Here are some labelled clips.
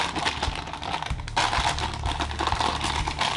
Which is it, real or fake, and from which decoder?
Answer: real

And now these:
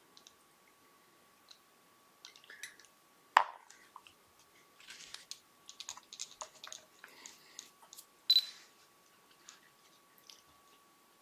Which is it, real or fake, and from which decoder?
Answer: real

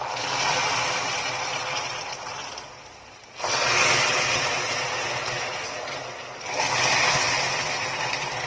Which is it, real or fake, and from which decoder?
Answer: real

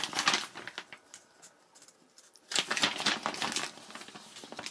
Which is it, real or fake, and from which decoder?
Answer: real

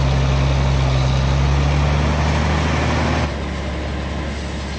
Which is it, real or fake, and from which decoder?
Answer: real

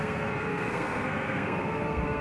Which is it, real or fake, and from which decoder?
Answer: fake, codec, SNAC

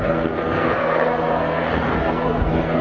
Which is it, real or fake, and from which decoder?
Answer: fake, codec, SNAC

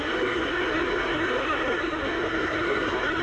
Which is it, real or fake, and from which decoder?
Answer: fake, codec, SNAC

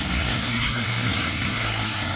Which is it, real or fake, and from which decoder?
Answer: fake, codec, SNAC